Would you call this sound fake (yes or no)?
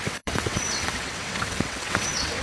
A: yes